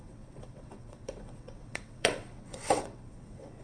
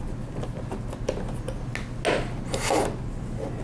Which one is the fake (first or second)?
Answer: first